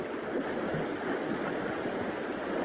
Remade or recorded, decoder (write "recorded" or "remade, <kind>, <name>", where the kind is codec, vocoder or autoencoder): recorded